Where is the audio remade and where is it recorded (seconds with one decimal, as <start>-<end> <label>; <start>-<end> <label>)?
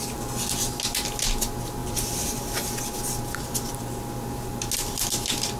0.0-5.6 recorded